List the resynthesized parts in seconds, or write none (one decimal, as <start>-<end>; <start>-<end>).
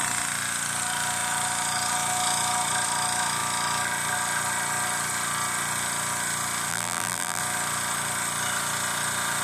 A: 6.7-7.4